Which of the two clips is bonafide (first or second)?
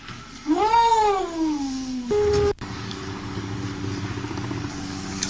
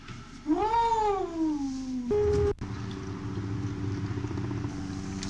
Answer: second